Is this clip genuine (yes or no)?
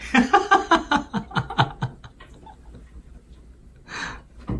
yes